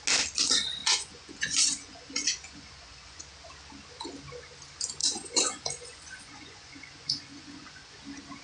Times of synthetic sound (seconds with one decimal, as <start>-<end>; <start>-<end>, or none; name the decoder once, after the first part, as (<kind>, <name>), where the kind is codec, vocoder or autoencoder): 0.8-3.2 (vocoder, Vocos); 5.0-8.0